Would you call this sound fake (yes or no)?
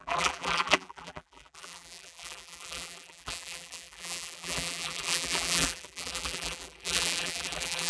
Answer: yes